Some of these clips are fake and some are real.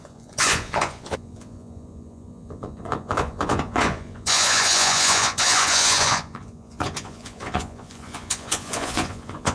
fake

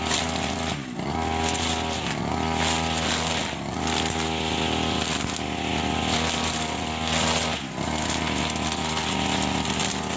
real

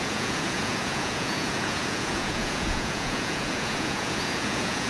fake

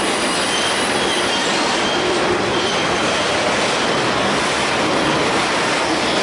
real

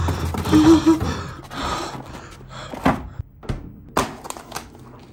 real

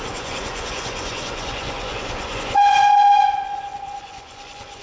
fake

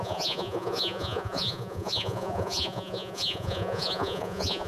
fake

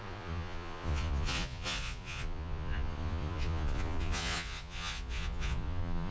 fake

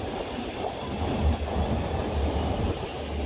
real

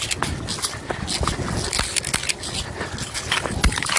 real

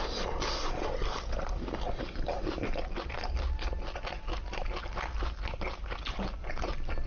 real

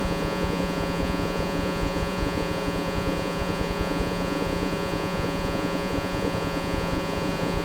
fake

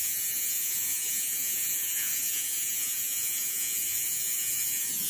fake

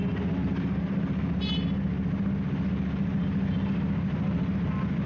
real